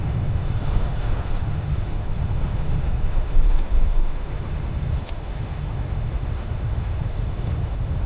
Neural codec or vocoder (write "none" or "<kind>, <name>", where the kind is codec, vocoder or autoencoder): autoencoder, DAC-VAE